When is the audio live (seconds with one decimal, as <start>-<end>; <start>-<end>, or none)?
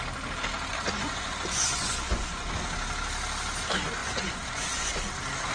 0.0-0.7; 2.5-4.0; 5.1-5.5